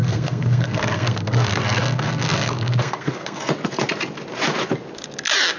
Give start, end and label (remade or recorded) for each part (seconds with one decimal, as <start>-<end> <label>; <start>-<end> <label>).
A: 0.0-3.4 remade; 3.4-5.6 recorded